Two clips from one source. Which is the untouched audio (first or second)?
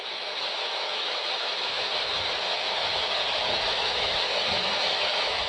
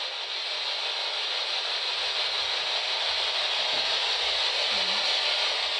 second